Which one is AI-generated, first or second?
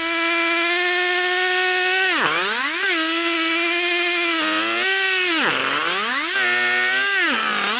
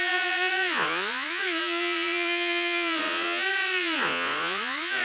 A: second